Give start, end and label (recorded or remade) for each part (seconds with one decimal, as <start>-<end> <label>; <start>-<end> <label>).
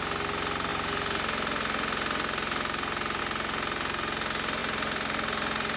0.0-4.6 recorded; 4.6-5.8 remade